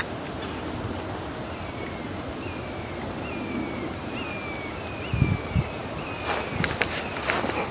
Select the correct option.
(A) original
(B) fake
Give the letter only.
A